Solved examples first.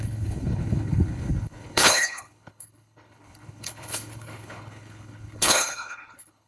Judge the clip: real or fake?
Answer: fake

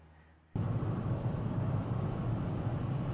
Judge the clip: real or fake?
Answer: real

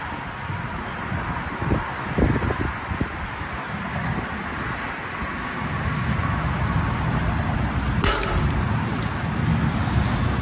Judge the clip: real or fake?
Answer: real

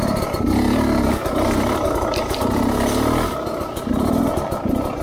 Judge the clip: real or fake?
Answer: real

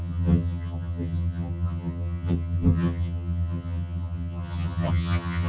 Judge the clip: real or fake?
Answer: fake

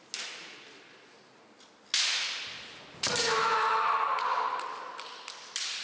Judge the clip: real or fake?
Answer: real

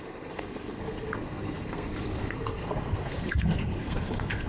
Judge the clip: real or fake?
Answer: fake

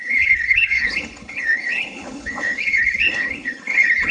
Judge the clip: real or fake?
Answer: fake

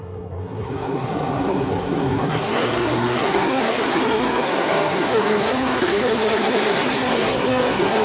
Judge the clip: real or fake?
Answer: fake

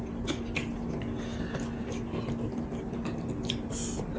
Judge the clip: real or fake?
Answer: real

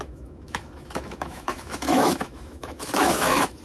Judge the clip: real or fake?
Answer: fake